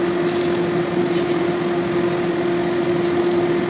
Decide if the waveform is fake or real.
real